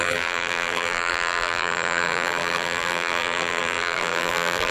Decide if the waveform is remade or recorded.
remade